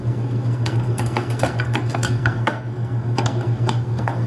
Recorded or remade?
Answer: remade